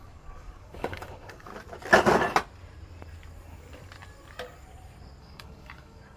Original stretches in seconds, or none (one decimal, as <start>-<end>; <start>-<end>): 1.5-5.2